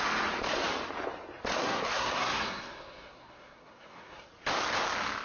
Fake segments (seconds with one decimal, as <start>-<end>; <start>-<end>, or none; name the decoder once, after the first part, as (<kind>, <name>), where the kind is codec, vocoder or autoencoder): 1.6-4.3 (codec, SNAC)